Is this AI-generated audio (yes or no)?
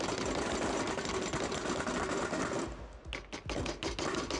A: no